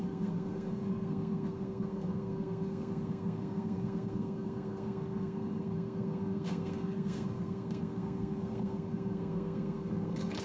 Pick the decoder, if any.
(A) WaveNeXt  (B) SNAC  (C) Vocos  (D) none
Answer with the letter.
B